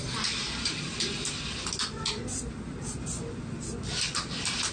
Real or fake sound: real